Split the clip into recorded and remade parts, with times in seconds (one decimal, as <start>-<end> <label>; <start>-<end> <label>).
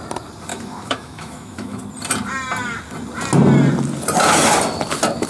0.0-0.5 recorded; 0.5-1.8 remade; 1.8-5.3 recorded